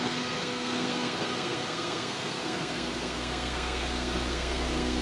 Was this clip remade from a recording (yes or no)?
yes